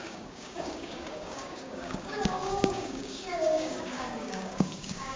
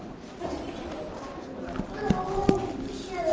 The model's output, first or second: first